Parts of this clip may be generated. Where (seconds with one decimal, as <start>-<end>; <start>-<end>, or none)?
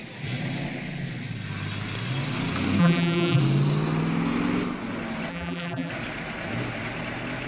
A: 2.8-3.4; 5.3-5.9